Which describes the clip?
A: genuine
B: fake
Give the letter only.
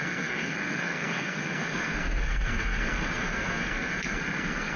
B